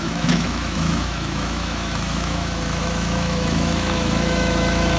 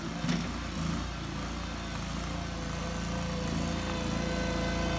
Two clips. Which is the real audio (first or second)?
second